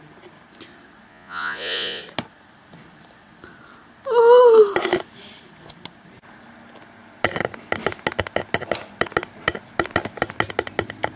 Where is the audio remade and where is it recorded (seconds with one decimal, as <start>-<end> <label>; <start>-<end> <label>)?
0.0-1.1 recorded; 1.1-2.0 remade; 2.0-11.2 recorded